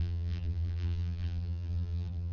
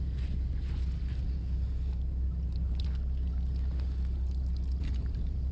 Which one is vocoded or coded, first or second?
first